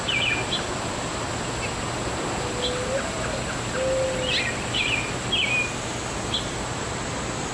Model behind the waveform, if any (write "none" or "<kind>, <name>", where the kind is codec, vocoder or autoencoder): none